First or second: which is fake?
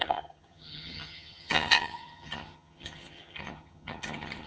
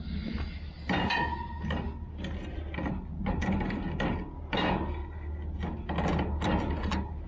first